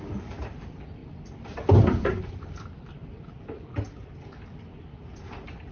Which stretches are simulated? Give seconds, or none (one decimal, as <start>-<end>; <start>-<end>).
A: none

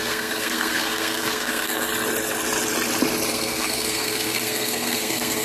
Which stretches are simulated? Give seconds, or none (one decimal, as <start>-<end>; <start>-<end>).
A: 0.0-1.9; 3.3-5.4

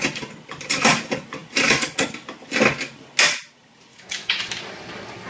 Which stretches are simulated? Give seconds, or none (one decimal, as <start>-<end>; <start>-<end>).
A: 3.9-4.4

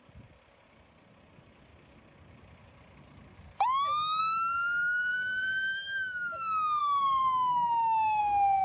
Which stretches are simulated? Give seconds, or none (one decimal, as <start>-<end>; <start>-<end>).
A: 5.1-6.8; 7.2-8.2

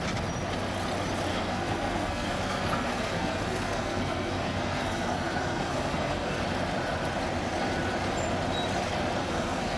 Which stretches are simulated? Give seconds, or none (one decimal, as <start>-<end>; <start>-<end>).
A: 1.3-6.4; 9.2-9.8

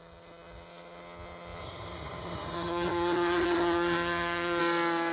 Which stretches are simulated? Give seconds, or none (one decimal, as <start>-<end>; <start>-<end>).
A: 1.6-4.6

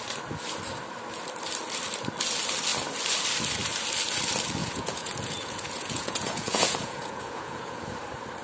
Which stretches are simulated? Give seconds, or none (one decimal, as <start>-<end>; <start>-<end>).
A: 4.6-7.8

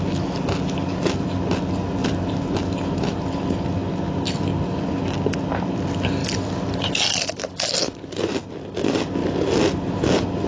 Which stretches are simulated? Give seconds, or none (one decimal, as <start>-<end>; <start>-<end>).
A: none